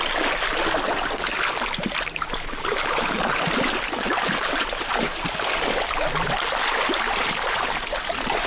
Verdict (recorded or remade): recorded